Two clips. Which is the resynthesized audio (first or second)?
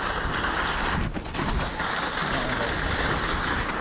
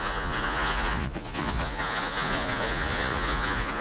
second